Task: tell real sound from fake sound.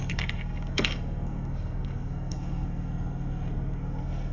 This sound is fake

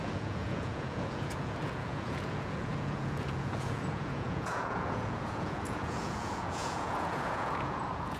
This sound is fake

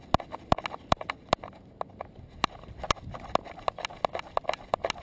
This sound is real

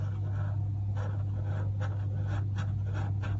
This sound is real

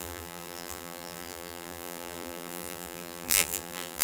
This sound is fake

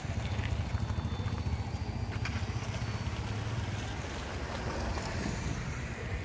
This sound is real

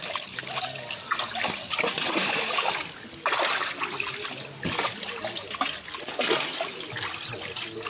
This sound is real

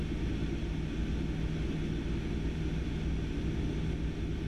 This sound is real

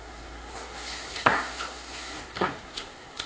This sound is fake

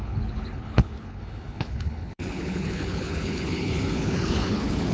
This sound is fake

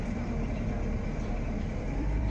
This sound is fake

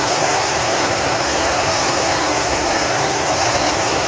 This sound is fake